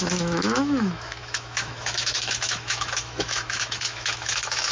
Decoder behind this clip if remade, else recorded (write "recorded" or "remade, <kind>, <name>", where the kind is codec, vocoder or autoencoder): remade, autoencoder, DAC-VAE